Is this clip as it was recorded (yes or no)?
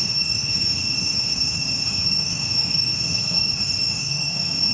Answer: no